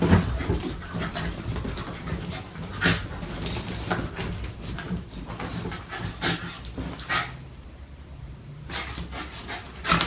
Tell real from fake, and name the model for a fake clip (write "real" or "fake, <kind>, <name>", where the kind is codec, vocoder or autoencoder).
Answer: real